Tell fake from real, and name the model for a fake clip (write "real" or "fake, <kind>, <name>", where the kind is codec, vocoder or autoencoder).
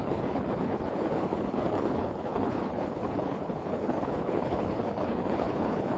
fake, codec, HILCodec